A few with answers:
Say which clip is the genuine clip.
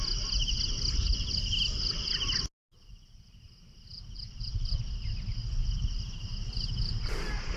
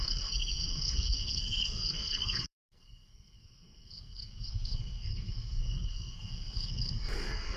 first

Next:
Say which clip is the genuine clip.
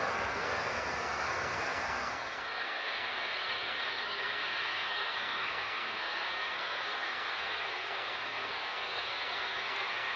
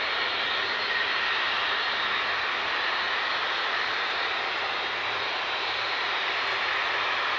second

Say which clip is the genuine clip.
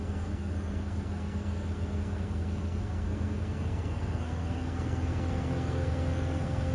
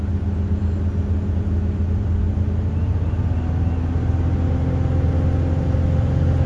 second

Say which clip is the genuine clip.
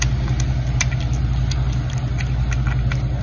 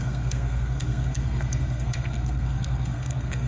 first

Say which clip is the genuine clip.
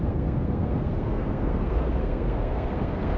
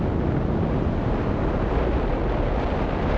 second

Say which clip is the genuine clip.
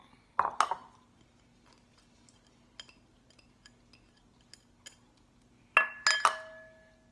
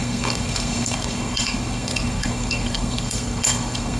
first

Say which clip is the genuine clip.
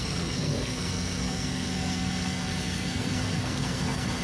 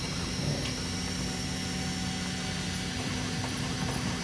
second